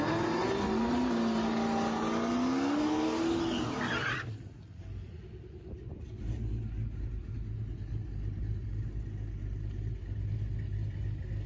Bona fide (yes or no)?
yes